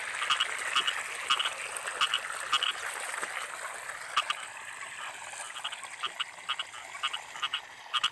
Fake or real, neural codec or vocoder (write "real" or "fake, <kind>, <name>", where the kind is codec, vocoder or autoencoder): real